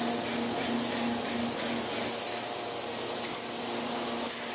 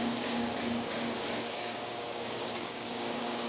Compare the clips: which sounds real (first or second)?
first